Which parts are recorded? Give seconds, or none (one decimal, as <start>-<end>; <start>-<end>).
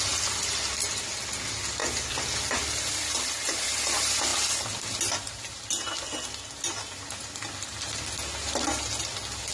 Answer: 0.0-1.8; 3.7-9.5